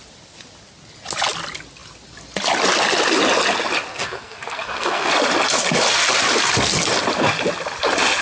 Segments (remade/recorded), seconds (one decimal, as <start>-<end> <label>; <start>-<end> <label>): 0.0-3.9 recorded; 3.9-5.1 remade; 5.1-8.2 recorded